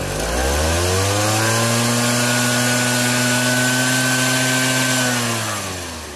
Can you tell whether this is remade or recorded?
recorded